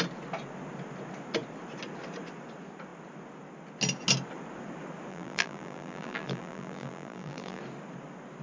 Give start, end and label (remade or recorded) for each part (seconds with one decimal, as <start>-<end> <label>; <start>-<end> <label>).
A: 0.0-5.1 recorded; 5.1-7.6 remade; 7.6-8.4 recorded